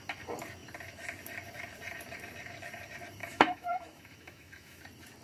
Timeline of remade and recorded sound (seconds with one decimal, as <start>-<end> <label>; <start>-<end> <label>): 0.0-3.2 recorded; 3.2-4.8 remade; 4.8-5.2 recorded